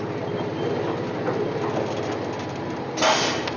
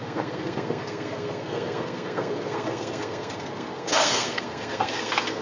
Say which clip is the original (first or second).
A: first